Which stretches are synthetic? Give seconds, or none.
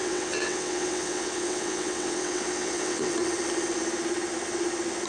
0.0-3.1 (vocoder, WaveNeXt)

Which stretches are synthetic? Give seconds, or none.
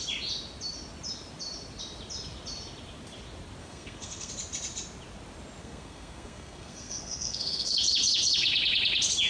3.6-4.3 (codec, SNAC); 5.6-7.8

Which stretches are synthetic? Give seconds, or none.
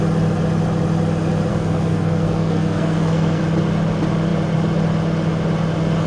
1.5-3.4 (codec, SNAC)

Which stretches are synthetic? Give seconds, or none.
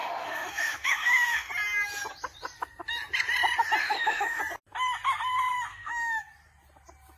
0.0-1.5 (autoencoder, DAC-VAE); 3.8-4.4; 5.7-6.2